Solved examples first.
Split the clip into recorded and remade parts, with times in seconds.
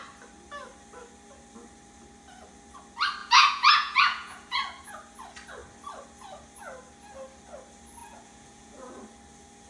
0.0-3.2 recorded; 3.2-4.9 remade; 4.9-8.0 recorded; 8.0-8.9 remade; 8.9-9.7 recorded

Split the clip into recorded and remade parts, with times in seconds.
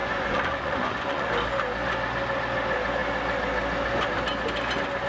0.0-1.3 remade; 1.3-5.1 recorded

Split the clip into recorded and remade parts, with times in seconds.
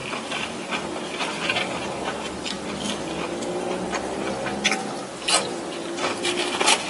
0.0-6.9 recorded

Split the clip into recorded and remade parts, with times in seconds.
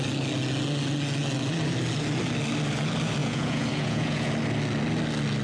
0.0-3.2 recorded; 3.2-4.3 remade; 4.3-5.4 recorded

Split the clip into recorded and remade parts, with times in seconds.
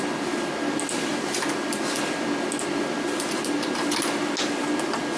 0.0-5.2 recorded